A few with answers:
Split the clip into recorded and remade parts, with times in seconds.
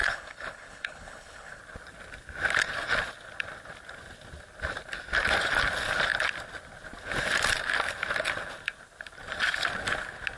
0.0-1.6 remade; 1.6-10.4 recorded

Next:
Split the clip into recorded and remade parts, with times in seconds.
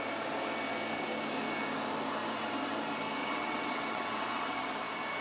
0.0-3.2 recorded; 3.2-4.7 remade; 4.7-5.2 recorded